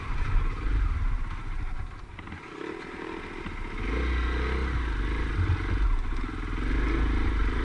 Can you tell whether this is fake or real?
real